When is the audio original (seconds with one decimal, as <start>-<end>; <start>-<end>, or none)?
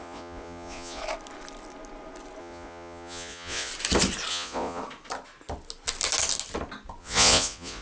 1.0-2.4; 3.7-4.3; 4.8-7.0